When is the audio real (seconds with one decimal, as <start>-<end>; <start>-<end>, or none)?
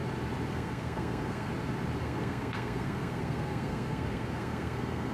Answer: 0.0-0.5; 1.5-2.0